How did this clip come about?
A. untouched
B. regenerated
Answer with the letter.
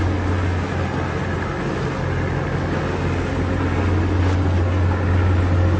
A